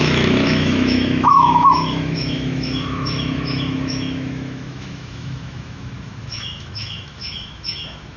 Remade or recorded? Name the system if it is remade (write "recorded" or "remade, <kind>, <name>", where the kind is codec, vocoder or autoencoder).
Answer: remade, autoencoder, DAC-VAE